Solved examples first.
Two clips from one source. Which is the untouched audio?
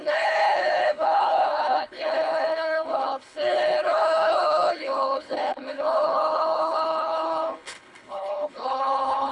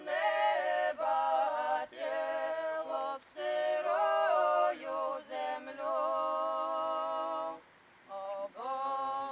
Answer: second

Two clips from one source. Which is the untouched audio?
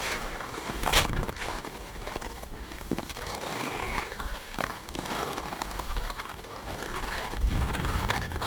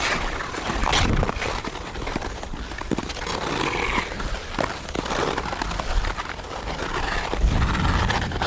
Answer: second